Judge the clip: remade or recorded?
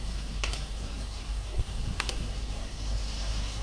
remade